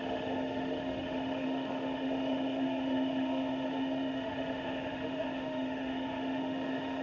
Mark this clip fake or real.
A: fake